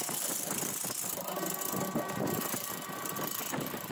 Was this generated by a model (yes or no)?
no